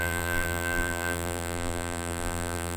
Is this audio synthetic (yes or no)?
yes